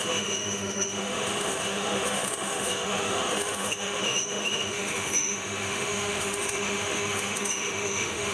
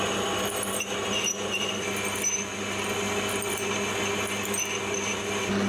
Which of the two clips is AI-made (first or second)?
first